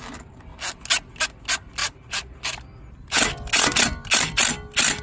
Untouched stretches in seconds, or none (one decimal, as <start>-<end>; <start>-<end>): 0.0-1.8; 2.6-5.0